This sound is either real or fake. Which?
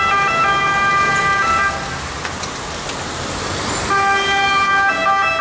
real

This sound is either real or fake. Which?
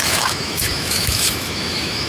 fake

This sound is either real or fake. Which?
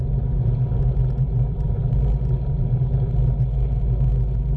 real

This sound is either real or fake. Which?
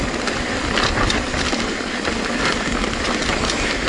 real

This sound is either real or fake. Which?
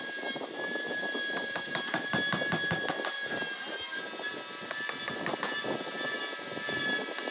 real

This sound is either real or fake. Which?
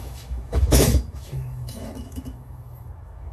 fake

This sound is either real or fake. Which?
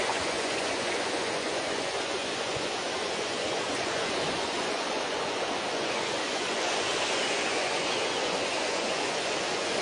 fake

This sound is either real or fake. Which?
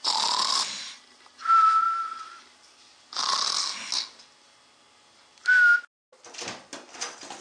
real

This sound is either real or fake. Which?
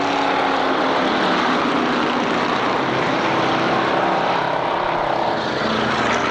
fake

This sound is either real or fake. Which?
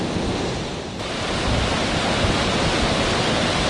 real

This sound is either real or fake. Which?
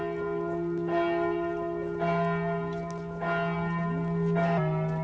real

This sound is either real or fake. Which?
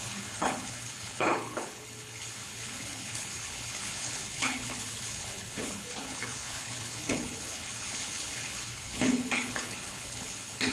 fake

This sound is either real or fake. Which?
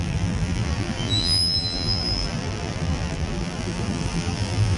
fake